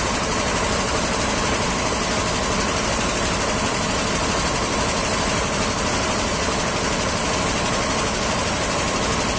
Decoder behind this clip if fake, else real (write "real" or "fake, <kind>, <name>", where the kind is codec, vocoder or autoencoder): fake, vocoder, BigVGAN v2